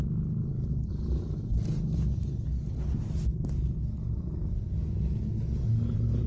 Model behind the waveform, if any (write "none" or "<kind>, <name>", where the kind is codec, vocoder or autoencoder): none